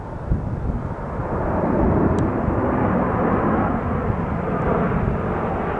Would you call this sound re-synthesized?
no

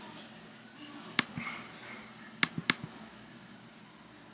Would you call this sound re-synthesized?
no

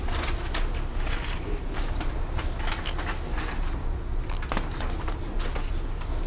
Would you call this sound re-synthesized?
no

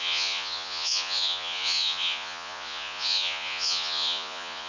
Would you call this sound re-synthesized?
yes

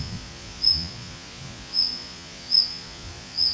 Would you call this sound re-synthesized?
yes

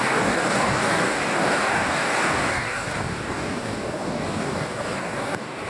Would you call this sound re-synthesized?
yes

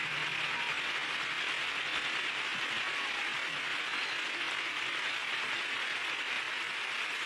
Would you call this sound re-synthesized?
no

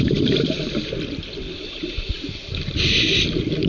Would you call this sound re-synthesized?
no